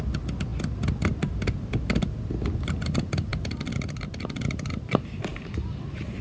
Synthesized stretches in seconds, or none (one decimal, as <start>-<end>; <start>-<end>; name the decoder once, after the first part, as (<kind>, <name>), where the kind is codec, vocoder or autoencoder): none